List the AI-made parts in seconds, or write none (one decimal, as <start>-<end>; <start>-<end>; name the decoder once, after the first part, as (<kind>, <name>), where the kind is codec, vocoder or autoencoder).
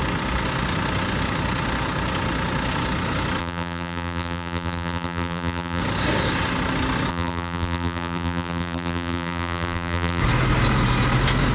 3.4-5.8 (vocoder, BigVGAN v2); 7.1-10.2